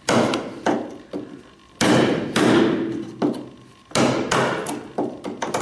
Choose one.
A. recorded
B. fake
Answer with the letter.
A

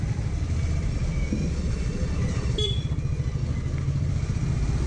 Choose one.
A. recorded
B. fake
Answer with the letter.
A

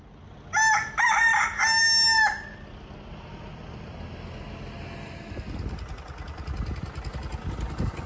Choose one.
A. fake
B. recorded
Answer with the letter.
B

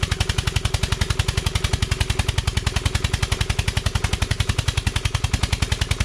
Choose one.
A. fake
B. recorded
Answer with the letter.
B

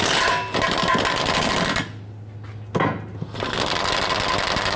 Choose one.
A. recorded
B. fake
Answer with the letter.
A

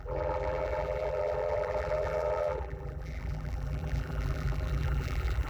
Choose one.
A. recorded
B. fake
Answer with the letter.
B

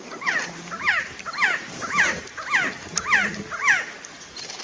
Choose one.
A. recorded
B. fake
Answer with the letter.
A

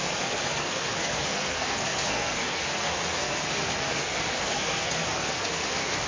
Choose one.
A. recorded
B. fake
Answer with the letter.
B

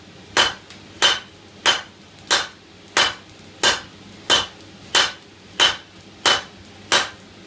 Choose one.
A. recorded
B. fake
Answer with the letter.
A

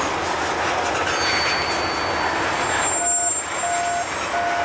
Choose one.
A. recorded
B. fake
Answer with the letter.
A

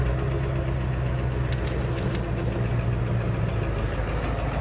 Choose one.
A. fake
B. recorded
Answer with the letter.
B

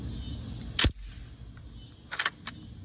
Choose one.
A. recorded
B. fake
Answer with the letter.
A